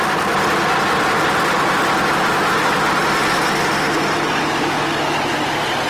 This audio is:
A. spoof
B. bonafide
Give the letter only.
B